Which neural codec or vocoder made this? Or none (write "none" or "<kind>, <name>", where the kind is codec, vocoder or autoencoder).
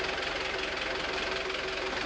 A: none